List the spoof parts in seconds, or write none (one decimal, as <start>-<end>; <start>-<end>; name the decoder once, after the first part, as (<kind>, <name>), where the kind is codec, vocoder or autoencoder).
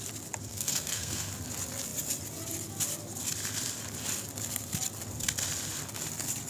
0.5-1.3 (codec, SNAC)